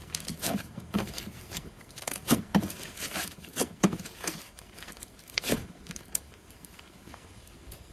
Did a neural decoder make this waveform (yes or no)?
yes